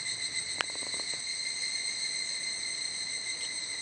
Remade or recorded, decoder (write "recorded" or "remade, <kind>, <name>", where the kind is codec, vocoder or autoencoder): recorded